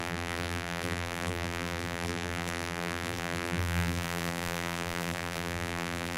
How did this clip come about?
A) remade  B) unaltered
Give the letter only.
A